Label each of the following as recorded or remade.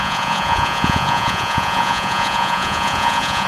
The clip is remade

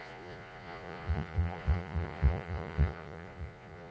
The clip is remade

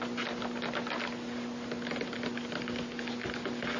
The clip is recorded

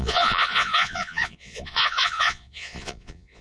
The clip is remade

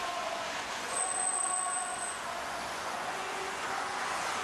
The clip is remade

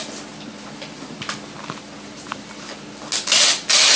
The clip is recorded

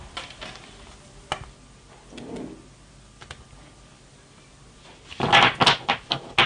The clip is recorded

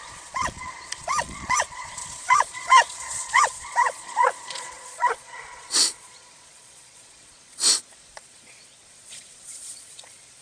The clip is remade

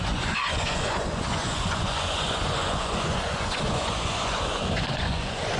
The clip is remade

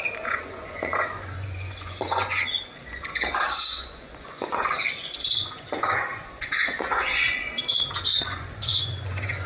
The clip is remade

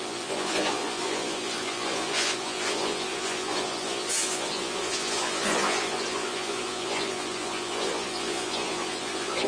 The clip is remade